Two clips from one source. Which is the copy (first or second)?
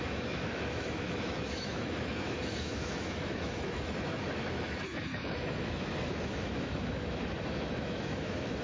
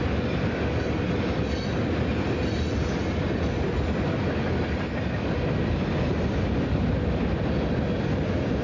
first